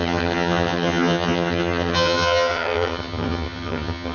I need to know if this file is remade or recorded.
remade